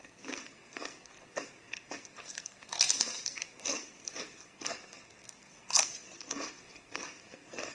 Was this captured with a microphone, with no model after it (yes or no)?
no